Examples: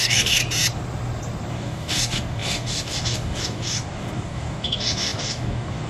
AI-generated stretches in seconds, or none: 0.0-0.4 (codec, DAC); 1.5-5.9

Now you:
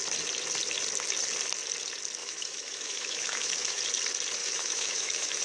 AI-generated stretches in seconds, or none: 2.2-3.8 (autoencoder, DAC-VAE); 4.4-5.4

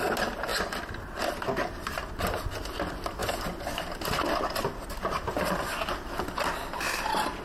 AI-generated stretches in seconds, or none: none